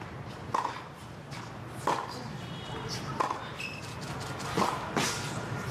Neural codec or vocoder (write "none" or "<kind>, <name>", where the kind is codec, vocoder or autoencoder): none